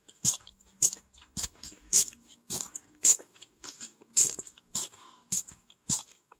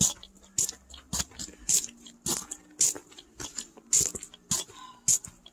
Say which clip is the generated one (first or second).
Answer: first